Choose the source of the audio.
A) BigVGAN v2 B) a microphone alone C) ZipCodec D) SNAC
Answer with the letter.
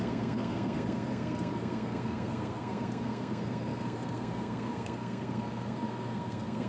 D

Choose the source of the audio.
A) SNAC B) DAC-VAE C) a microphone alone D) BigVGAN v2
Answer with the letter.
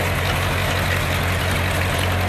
C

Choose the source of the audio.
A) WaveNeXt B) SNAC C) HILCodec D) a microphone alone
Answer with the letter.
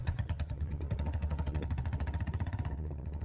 A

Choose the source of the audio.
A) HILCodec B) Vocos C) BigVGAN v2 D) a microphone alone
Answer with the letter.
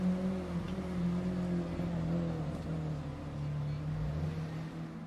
D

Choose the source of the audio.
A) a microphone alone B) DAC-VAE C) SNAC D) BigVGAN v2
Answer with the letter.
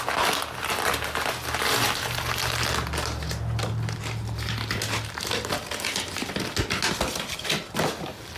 A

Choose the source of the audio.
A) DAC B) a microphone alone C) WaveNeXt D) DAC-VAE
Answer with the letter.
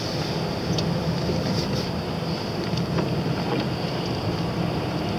B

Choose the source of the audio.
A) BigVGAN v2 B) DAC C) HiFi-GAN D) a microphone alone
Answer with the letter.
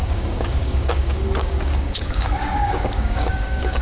B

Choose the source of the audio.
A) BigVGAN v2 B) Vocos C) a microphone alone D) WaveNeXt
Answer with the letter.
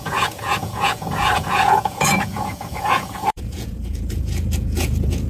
B